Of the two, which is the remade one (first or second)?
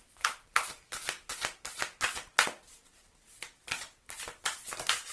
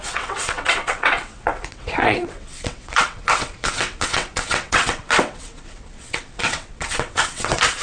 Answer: second